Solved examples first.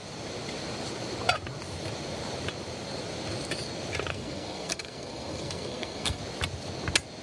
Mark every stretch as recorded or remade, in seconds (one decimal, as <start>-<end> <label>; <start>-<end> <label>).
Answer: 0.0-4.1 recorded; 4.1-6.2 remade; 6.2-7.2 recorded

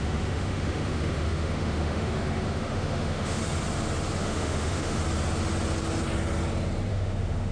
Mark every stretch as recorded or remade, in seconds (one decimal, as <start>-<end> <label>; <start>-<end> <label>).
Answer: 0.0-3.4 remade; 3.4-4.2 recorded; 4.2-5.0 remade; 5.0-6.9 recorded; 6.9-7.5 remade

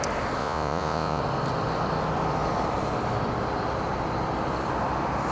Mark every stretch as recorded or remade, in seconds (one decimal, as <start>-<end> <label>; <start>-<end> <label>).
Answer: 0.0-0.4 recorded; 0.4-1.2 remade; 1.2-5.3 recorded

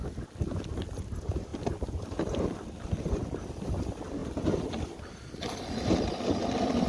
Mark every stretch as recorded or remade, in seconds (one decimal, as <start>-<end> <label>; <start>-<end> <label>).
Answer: 0.0-6.9 recorded

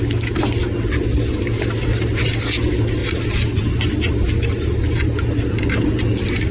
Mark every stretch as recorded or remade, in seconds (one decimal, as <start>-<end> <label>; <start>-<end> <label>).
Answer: 0.0-6.5 recorded

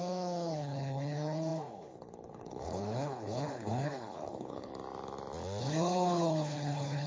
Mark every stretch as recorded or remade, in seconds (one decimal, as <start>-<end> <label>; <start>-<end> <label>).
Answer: 0.0-4.7 remade; 4.7-5.6 recorded; 5.6-7.1 remade

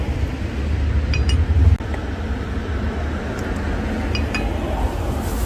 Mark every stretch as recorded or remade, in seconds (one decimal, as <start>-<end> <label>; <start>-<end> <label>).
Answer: 0.0-5.5 recorded

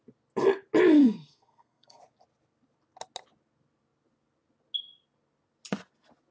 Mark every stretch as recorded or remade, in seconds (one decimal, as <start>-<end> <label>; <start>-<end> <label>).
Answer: 0.0-1.0 recorded; 1.0-2.0 remade; 2.0-6.3 recorded